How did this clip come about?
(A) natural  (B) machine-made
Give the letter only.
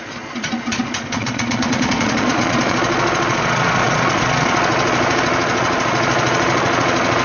B